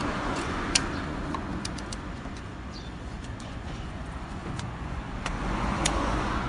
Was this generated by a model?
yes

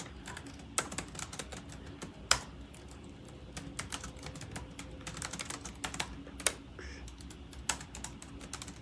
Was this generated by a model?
no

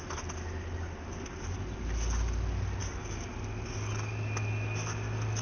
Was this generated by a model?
no